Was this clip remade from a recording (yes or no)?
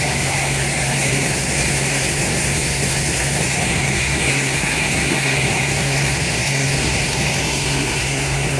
yes